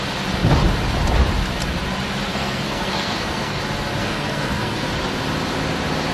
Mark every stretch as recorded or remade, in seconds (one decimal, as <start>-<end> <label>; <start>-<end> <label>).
0.0-2.3 recorded; 2.3-3.6 remade; 3.6-4.0 recorded; 4.0-4.9 remade; 4.9-6.1 recorded